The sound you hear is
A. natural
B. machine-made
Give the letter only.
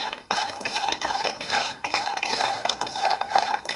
B